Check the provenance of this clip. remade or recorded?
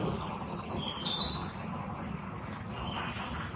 recorded